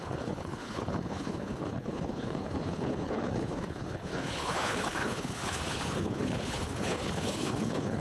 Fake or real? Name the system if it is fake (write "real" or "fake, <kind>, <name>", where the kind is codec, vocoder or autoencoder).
fake, codec, HILCodec